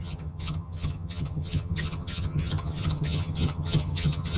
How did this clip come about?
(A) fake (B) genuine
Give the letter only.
A